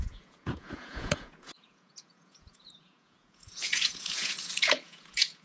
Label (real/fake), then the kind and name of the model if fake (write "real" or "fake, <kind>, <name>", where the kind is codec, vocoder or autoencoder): fake, vocoder, Vocos